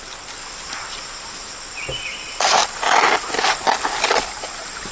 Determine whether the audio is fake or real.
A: real